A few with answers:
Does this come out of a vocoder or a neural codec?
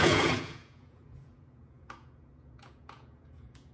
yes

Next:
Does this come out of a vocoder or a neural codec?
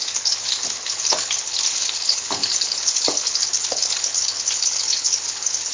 yes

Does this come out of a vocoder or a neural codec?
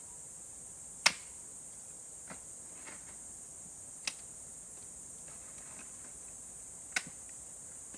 no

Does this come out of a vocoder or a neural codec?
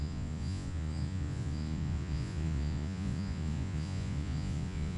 yes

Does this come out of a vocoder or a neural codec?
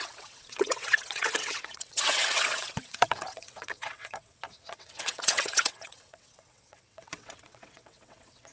yes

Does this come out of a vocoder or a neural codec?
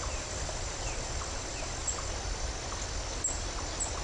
no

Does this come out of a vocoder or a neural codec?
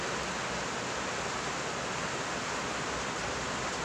no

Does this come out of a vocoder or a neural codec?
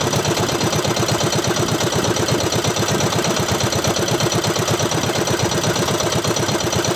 yes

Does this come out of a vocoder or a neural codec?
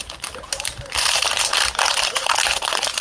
yes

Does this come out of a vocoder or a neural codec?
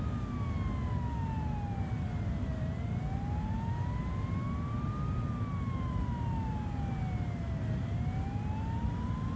no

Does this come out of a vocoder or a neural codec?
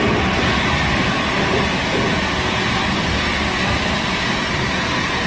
no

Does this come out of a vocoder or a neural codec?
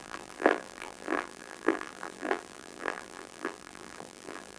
yes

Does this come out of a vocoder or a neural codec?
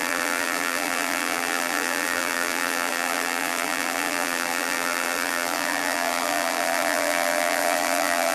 yes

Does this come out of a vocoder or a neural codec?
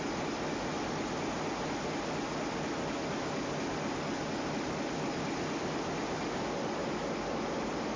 no